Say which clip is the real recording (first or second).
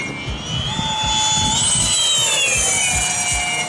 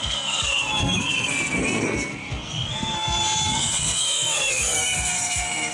first